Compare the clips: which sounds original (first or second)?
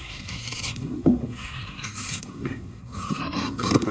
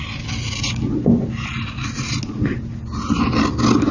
second